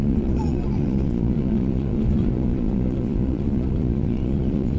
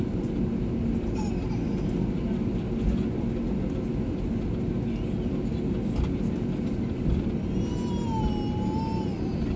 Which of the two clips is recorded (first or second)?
second